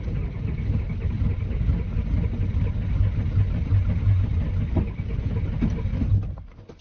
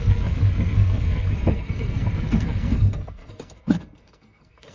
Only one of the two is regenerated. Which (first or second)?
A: second